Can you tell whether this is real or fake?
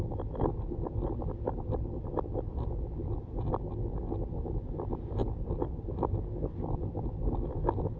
fake